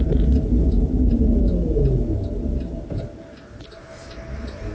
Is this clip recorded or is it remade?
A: recorded